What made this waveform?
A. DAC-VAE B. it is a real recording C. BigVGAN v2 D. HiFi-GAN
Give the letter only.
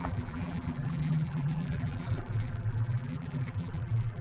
C